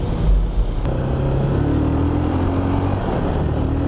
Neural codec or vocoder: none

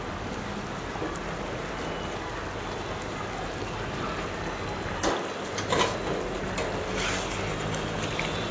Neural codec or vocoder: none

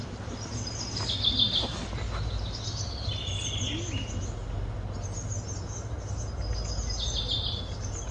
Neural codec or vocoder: none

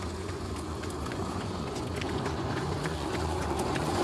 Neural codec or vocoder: vocoder, Vocos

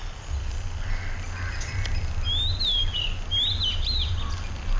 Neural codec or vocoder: none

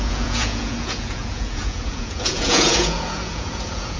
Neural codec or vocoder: vocoder, Vocos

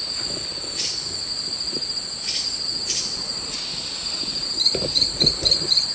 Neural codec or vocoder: none